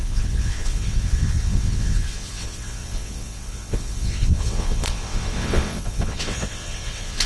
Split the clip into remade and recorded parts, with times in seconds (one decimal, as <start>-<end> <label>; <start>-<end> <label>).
0.0-7.3 remade